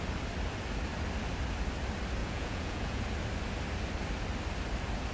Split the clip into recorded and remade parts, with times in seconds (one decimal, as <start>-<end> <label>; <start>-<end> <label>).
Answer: 0.0-2.2 recorded; 2.2-3.0 remade; 3.0-5.1 recorded